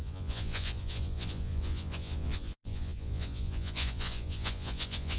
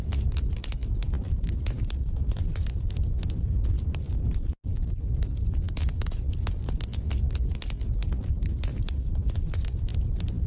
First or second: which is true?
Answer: second